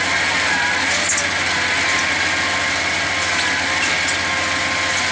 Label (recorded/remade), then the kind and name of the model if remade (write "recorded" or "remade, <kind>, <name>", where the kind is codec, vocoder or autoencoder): recorded